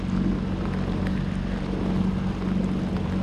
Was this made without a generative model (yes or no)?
yes